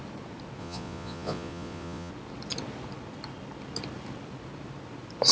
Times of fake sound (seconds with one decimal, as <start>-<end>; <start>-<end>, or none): 0.6-2.1